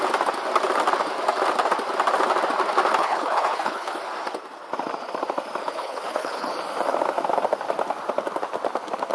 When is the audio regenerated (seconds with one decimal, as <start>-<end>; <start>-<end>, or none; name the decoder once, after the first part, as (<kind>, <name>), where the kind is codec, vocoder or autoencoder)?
3.0-4.0 (codec, HILCodec); 5.6-6.5